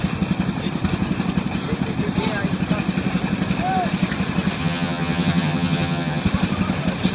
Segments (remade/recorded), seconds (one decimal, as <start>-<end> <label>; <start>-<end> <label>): 0.0-4.6 recorded; 4.6-6.2 remade; 6.2-7.1 recorded